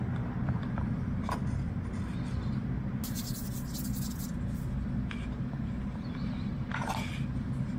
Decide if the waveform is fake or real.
real